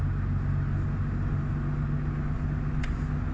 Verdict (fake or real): real